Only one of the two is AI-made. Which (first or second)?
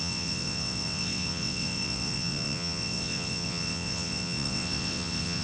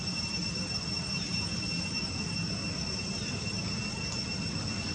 first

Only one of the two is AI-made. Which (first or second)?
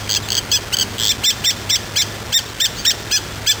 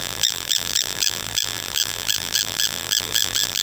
second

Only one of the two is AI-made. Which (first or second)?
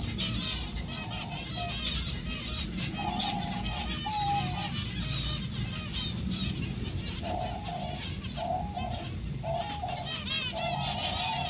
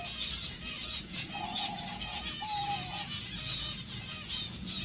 second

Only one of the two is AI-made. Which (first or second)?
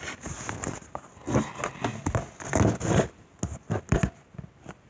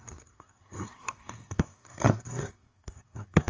second